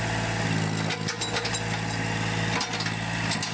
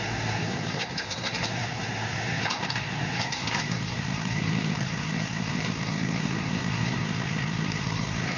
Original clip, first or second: first